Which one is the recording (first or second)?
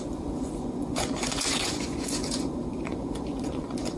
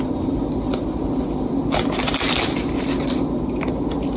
second